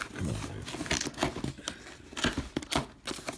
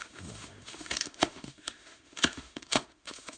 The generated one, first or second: second